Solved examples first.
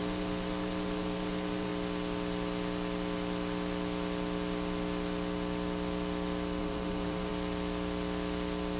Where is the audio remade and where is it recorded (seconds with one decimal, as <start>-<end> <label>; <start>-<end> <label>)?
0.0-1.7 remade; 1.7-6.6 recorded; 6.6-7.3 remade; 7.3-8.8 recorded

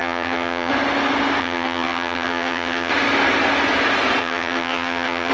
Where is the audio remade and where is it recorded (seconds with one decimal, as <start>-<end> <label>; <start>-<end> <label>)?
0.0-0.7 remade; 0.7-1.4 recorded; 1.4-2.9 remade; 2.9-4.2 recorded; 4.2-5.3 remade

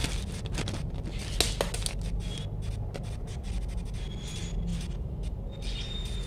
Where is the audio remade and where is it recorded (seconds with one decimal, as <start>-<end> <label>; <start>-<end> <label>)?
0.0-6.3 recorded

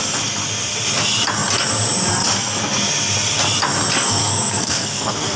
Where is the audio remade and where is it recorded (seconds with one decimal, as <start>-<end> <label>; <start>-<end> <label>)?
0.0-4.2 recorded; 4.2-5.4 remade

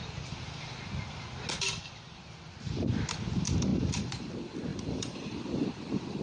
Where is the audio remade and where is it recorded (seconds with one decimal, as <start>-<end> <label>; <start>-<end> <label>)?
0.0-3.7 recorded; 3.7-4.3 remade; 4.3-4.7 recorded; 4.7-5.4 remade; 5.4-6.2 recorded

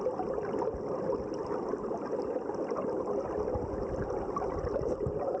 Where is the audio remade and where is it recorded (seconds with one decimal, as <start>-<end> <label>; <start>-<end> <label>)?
0.0-5.4 recorded

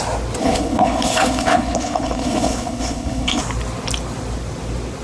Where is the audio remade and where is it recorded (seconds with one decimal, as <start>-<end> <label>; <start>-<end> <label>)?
0.0-0.4 recorded; 0.4-3.4 remade; 3.4-5.0 recorded